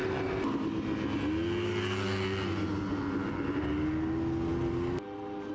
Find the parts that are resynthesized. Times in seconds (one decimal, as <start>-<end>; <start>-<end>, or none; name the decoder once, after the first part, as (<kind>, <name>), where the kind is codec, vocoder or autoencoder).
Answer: none